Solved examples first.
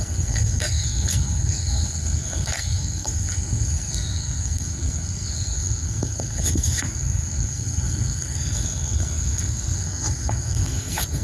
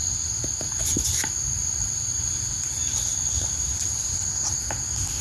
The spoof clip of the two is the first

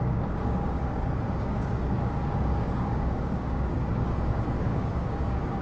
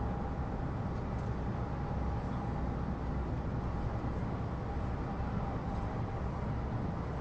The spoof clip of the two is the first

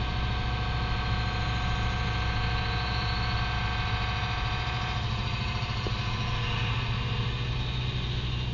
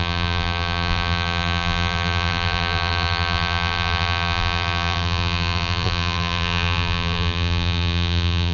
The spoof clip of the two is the second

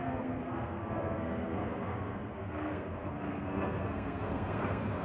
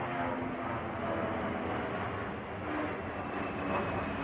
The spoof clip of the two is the first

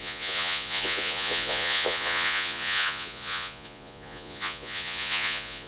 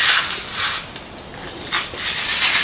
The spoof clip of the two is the first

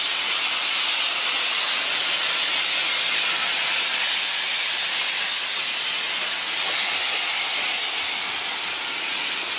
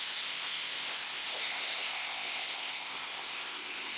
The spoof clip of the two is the second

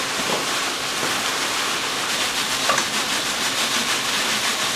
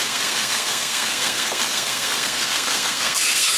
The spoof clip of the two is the second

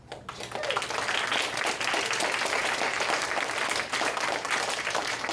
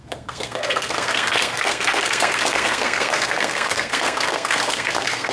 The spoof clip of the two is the second